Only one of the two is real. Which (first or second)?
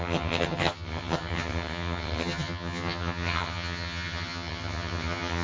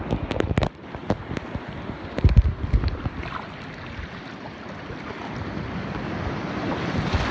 second